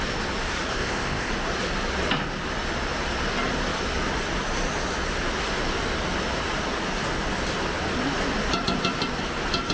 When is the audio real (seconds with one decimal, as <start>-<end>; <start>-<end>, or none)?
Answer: 0.0-0.7; 1.3-9.7